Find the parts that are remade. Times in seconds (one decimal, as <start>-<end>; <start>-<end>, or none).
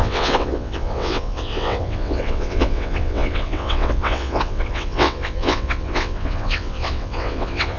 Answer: 0.0-7.8